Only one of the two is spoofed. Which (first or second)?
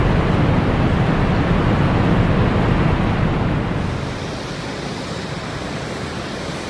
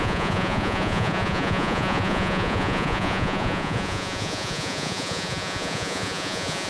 second